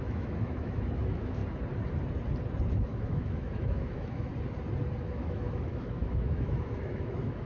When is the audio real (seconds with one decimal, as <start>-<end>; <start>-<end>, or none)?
1.4-2.7; 4.3-5.0